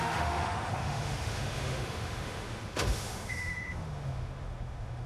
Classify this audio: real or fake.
fake